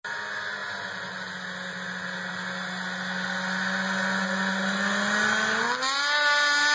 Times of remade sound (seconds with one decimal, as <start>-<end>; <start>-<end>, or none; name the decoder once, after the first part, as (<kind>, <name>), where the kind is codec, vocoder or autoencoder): none